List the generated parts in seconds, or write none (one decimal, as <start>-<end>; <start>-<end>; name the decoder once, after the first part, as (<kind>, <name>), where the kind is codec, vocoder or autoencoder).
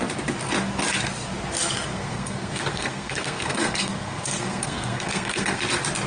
1.9-5.6 (codec, SNAC)